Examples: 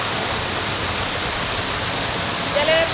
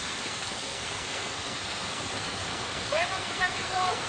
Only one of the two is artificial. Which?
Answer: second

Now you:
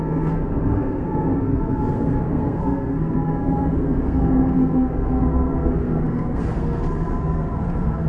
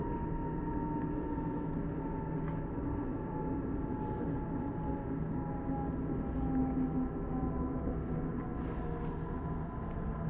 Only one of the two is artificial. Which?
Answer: first